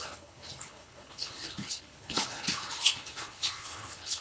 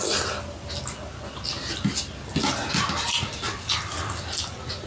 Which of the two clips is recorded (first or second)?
second